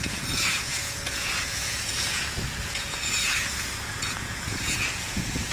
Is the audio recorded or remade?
remade